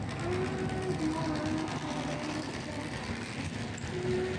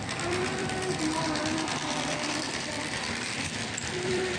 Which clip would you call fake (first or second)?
second